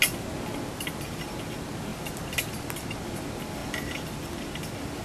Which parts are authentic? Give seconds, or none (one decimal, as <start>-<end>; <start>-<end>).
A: 0.0-5.0